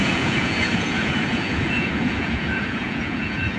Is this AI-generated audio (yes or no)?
yes